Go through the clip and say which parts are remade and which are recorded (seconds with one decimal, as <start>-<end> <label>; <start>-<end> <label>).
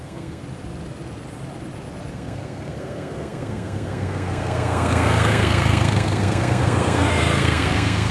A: 0.0-0.4 remade; 0.4-2.1 recorded; 2.1-8.1 remade